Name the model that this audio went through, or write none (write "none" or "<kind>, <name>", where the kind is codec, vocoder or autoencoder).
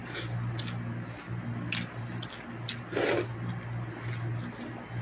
none